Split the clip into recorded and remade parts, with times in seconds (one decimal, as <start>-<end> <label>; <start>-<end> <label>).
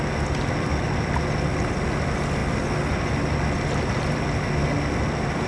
0.0-5.5 recorded